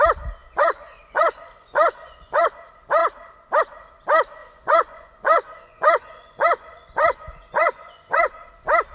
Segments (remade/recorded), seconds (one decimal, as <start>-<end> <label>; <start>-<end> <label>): 0.0-0.4 recorded; 0.4-2.5 remade; 2.5-4.4 recorded; 4.4-8.3 remade; 8.3-8.9 recorded